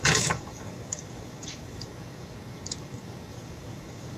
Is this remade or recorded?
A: remade